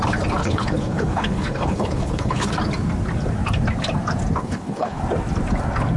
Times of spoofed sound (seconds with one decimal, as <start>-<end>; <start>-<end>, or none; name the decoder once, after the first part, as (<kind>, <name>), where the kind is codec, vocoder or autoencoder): 0.4-2.5 (codec, HILCodec); 4.4-5.0